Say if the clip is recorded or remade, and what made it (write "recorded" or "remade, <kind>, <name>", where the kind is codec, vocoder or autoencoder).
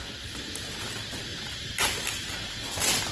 recorded